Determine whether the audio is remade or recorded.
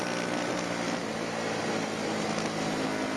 recorded